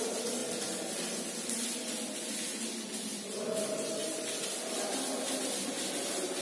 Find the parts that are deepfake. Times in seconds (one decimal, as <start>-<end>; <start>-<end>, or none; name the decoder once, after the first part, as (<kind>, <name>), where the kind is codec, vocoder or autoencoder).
0.4-1.0 (vocoder, BigVGAN v2); 4.0-4.5